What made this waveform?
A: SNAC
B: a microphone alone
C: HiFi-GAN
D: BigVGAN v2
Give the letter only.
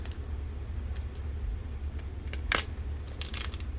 B